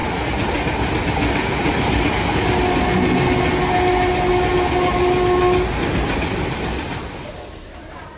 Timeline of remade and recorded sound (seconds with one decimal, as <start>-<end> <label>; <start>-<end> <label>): 0.0-8.2 recorded